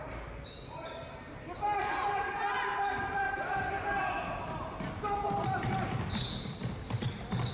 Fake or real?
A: real